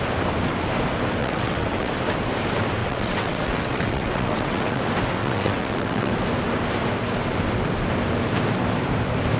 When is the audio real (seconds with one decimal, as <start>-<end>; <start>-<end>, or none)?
0.0-1.2; 1.9-2.8; 4.8-5.2; 6.1-9.4